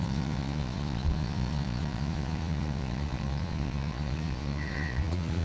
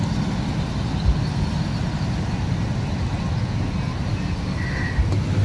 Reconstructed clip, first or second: first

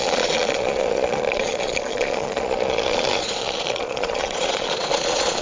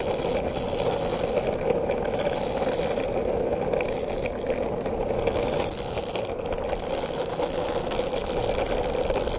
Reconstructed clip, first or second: first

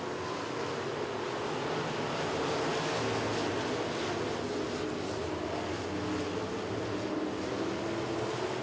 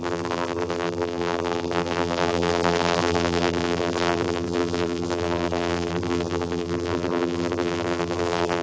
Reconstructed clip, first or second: second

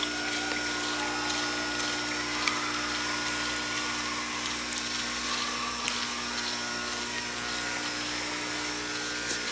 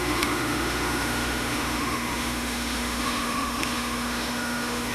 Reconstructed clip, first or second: second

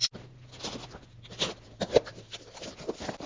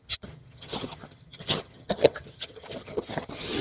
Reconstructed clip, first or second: second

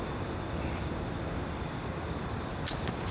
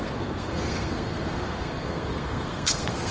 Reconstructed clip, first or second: second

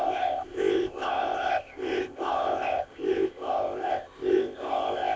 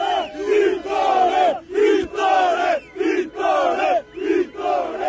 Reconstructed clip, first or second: first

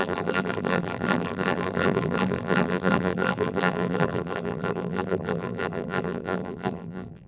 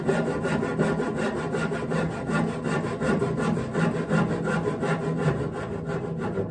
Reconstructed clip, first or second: first